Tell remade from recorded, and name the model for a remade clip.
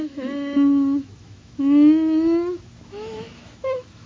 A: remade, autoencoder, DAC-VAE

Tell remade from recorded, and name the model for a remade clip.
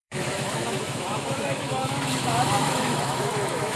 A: remade, autoencoder, DAC-VAE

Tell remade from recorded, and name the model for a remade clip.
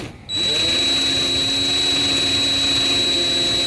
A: recorded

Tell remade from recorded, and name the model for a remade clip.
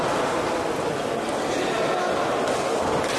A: recorded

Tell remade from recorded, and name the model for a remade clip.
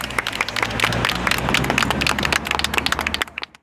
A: recorded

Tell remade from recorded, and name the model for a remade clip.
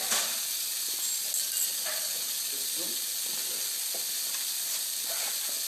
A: recorded